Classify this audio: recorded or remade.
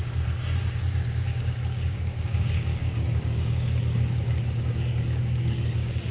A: remade